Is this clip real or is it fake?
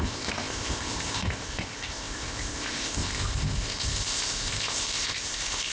fake